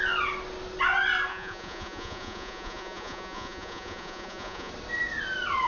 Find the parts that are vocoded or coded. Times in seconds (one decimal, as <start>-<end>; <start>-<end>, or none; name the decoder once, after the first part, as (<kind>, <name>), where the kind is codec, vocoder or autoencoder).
1.3-4.7 (vocoder, Vocos)

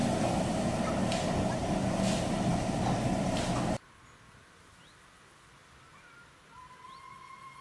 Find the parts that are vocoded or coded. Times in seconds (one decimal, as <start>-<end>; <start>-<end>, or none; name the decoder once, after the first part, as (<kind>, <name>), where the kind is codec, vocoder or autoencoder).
0.0-0.5 (vocoder, BigVGAN v2); 2.5-3.5

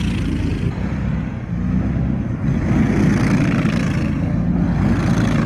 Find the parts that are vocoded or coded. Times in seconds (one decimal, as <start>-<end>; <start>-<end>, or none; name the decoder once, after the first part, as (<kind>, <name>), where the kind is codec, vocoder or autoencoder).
none

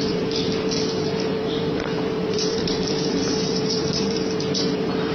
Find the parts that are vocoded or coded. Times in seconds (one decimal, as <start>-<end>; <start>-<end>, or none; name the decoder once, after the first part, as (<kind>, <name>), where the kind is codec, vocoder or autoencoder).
0.0-5.1 (vocoder, BigVGAN v2)

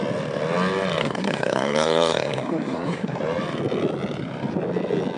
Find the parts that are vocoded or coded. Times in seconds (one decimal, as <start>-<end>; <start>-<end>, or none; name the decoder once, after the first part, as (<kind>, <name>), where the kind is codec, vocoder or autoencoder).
1.0-3.2 (codec, SNAC)

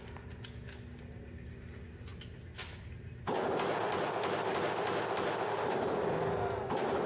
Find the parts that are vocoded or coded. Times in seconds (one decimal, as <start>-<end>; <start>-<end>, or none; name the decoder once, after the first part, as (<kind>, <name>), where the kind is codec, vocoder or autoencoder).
none

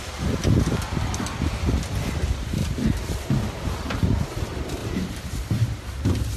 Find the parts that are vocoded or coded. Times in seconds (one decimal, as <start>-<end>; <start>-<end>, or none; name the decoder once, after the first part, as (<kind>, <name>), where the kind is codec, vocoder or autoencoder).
2.6-3.3 (vocoder, BigVGAN v2); 4.8-6.4

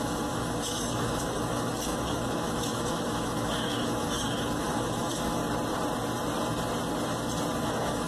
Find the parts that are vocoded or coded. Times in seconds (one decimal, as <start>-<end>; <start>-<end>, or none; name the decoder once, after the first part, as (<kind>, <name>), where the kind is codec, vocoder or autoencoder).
0.0-5.4 (autoencoder, DAC-VAE); 7.6-8.1